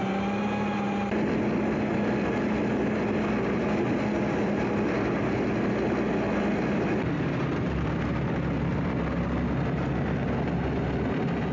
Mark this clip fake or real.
real